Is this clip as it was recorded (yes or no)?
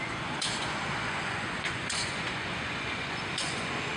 no